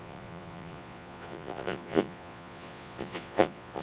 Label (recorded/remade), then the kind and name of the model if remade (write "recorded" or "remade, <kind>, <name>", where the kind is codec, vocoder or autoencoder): remade, vocoder, Vocos